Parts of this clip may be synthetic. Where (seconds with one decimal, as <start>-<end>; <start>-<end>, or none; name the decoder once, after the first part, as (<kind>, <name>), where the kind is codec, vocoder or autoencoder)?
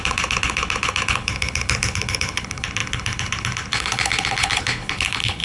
0.0-5.4 (codec, HILCodec)